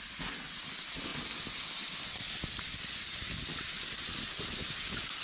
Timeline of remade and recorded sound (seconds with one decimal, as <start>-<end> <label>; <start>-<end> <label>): 0.0-5.2 recorded